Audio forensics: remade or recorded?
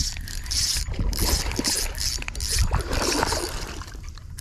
remade